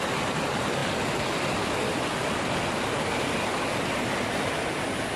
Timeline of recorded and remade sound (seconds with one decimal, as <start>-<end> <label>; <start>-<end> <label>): 0.0-5.2 recorded

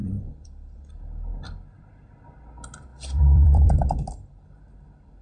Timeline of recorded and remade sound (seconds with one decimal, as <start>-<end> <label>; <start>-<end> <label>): 0.0-0.9 remade; 0.9-1.3 recorded; 1.3-1.9 remade; 1.9-2.9 recorded; 2.9-4.0 remade; 4.0-5.2 recorded

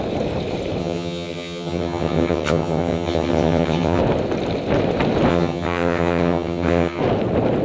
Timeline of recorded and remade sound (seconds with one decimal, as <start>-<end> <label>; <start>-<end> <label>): 0.0-0.8 recorded; 0.8-4.0 remade; 4.0-5.3 recorded; 5.3-7.0 remade; 7.0-7.6 recorded

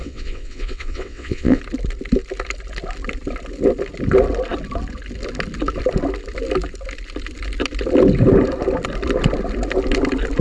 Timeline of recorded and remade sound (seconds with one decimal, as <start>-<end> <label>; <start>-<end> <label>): 0.0-1.6 remade; 1.6-10.4 recorded

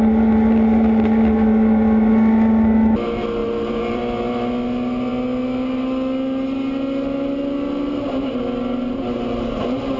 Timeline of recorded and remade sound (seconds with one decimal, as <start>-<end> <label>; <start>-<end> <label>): 0.0-3.4 recorded; 3.4-4.0 remade; 4.0-10.0 recorded

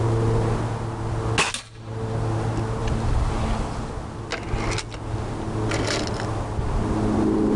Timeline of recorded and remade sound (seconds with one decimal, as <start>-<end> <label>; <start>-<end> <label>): 0.0-2.8 recorded; 2.8-3.9 remade; 3.9-7.6 recorded

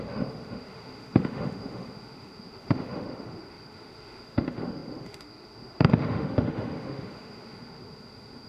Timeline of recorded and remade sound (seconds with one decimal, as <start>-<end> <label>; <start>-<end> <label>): 0.0-8.5 remade